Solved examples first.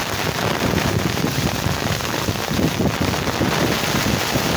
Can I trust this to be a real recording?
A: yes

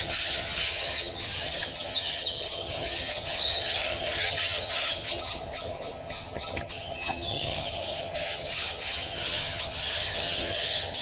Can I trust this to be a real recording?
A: no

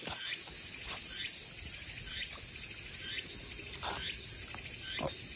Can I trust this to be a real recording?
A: yes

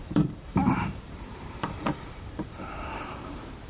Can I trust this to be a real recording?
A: no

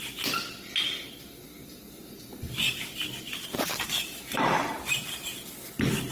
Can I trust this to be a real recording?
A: yes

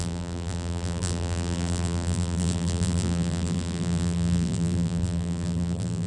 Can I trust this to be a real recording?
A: no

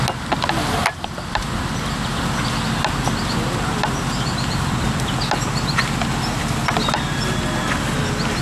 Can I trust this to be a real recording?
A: yes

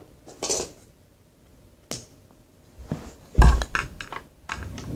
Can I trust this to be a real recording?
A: yes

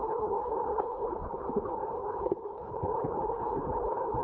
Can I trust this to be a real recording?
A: no